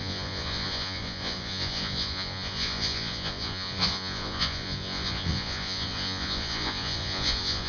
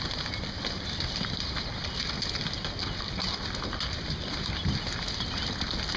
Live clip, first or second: second